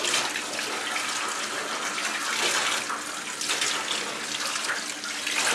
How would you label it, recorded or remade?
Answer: recorded